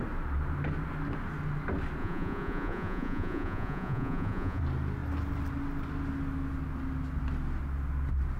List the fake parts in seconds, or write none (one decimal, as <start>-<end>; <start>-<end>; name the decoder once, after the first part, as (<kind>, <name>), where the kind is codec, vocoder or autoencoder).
2.0-4.6 (vocoder, Vocos)